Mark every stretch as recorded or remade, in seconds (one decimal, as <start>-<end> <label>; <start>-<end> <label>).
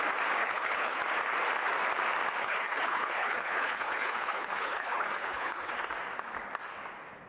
0.0-0.4 recorded; 0.4-1.0 remade; 1.0-2.4 recorded; 2.4-5.7 remade; 5.7-7.3 recorded